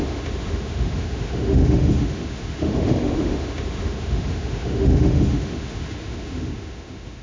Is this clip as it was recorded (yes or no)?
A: no